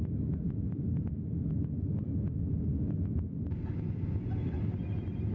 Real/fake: real